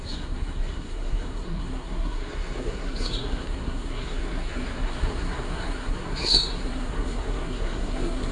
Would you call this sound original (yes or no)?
no